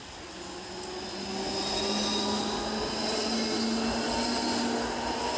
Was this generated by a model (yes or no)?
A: no